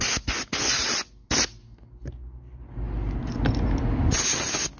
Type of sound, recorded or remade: recorded